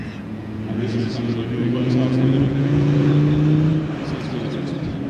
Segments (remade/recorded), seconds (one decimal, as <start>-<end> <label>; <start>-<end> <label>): 0.0-3.1 remade; 3.1-5.1 recorded